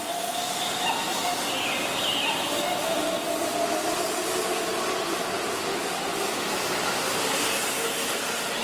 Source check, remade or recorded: recorded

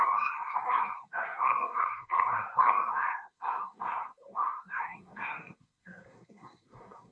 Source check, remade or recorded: remade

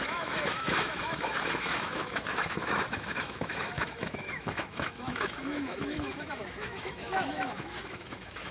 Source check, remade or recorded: remade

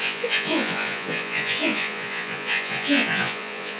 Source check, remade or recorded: remade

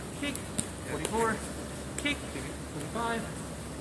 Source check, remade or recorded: recorded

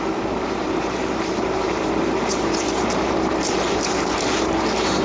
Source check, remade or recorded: remade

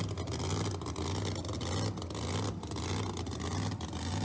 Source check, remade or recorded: recorded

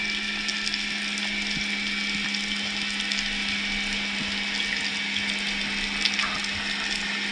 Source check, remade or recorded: recorded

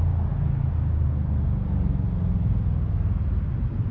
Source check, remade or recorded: recorded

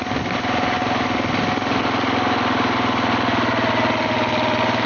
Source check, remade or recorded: recorded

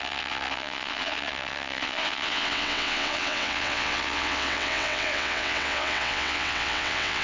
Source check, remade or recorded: remade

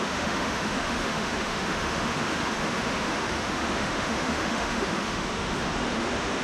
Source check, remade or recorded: remade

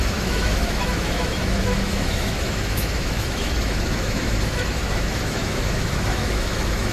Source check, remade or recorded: remade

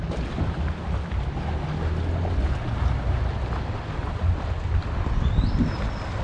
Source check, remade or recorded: recorded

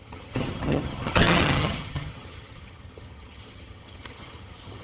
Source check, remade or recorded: remade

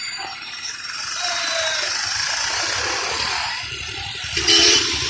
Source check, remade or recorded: remade